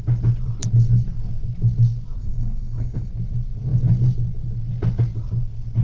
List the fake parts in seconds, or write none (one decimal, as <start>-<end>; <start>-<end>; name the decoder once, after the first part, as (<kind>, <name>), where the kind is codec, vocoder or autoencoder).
2.2-3.1 (codec, DAC)